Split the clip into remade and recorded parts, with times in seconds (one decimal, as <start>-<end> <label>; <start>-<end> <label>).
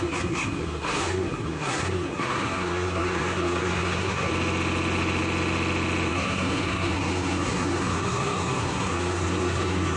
0.0-4.3 remade; 4.3-6.1 recorded; 6.1-10.0 remade